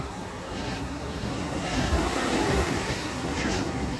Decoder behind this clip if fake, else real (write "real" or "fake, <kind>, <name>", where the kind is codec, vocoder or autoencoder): fake, codec, SNAC